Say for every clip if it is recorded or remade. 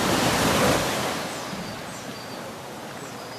recorded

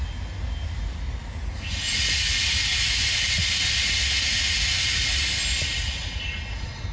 recorded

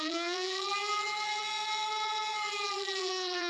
remade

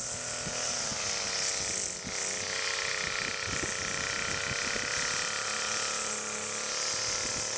recorded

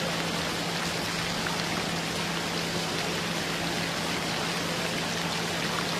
recorded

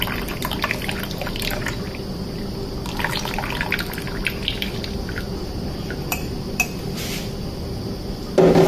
recorded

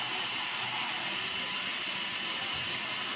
recorded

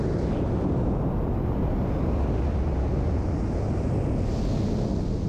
recorded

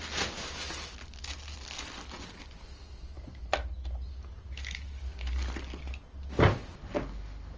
recorded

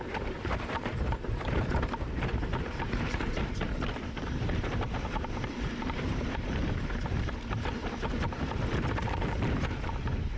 remade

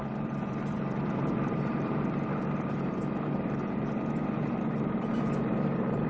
remade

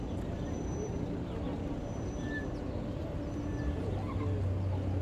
recorded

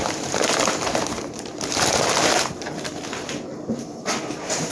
remade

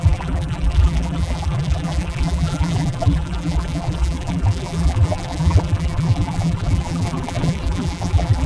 remade